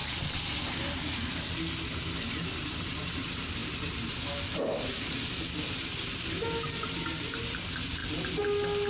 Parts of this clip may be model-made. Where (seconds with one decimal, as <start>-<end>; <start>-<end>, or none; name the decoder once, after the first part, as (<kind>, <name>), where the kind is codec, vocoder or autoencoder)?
0.0-3.6 (vocoder, BigVGAN v2); 5.0-8.0